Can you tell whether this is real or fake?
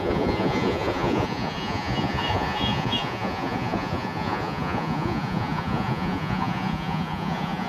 fake